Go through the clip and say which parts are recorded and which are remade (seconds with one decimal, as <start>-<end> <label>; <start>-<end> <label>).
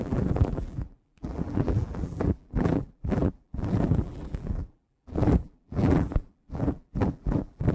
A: 0.0-7.7 remade